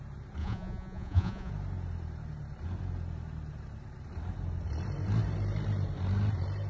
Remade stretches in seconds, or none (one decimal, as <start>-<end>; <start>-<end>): 0.4-1.5